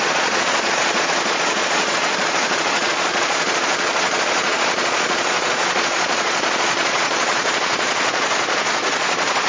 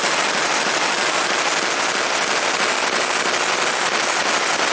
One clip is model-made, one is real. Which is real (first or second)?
second